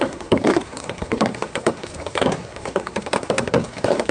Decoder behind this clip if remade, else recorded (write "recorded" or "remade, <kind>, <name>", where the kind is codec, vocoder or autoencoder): remade, codec, SNAC